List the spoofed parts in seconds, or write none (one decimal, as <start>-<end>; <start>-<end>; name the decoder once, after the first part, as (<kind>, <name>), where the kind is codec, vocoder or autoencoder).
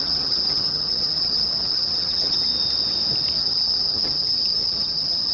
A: 0.0-2.5 (vocoder, HiFi-GAN); 3.3-5.3